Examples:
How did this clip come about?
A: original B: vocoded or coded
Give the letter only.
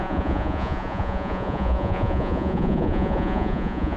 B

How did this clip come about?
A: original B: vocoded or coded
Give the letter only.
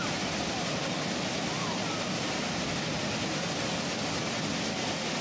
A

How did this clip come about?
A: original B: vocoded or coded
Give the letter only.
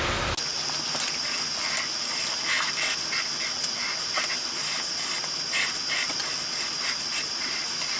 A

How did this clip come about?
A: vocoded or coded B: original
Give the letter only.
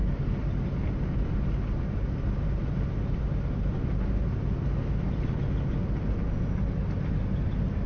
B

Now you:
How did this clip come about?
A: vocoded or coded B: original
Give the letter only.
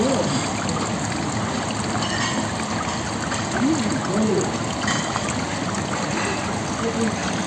B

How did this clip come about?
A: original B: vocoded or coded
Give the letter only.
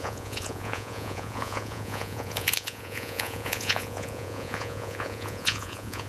B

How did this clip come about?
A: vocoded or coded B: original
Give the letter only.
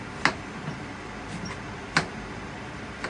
B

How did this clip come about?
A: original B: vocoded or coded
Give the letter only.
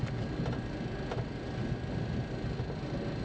A